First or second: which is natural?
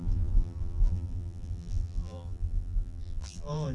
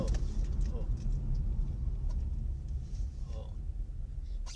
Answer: second